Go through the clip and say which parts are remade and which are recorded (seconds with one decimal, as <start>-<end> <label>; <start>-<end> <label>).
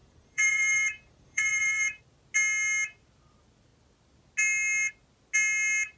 0.0-2.0 remade; 2.0-6.0 recorded